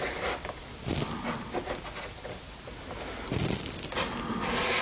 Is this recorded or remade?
recorded